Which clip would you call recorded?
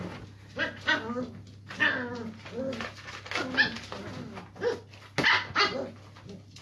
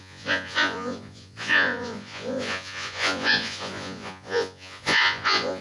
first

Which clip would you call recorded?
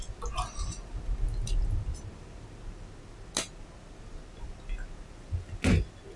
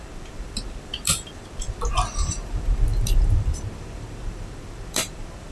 first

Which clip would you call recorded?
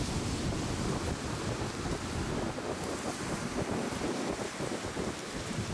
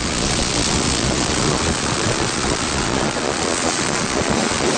first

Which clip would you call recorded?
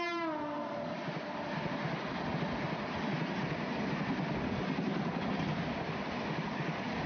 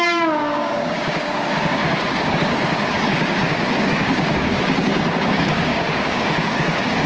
first